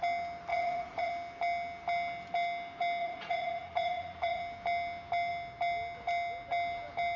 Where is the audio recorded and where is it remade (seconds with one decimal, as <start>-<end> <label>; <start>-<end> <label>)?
0.0-0.5 recorded; 0.5-1.1 remade; 1.1-3.0 recorded; 3.0-4.4 remade; 4.4-7.2 recorded